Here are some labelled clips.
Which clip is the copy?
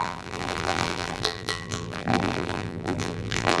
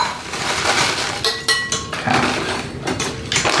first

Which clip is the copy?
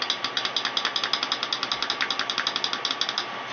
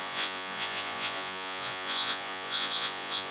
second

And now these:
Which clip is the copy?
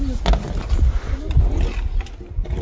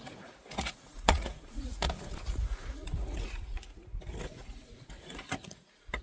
second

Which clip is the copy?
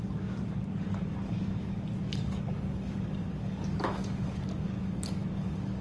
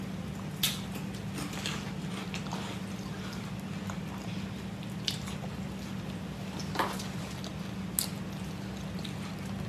first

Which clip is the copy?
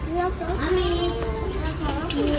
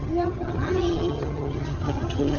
second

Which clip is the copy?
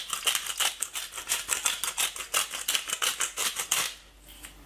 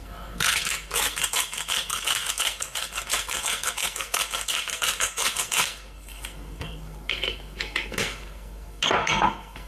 second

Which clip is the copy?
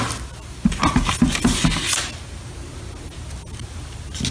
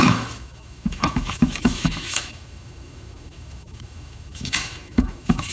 second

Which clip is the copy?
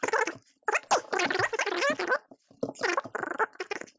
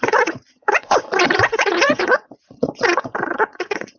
second